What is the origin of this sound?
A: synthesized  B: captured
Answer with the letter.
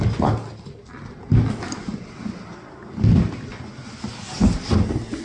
B